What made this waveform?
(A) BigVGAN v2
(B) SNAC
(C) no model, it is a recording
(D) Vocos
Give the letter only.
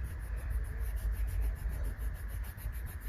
A